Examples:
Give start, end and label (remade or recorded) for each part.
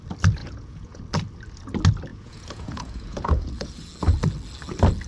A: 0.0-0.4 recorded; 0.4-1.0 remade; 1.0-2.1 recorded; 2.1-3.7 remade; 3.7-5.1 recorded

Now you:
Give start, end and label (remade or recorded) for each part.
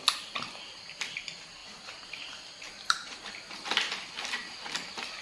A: 0.0-1.6 recorded; 1.6-3.7 remade; 3.7-5.2 recorded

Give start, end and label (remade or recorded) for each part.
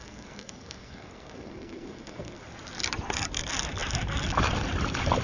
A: 0.0-2.4 remade; 2.4-5.2 recorded